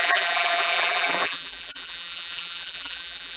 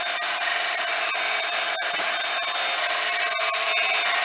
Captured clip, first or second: second